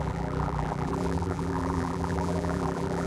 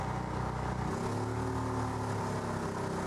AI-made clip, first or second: first